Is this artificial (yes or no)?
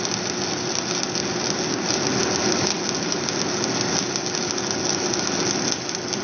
no